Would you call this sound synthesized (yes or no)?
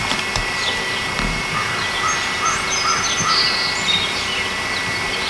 no